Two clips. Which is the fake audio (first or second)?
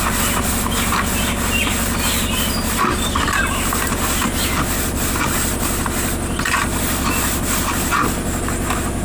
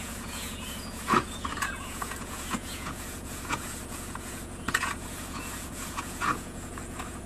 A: second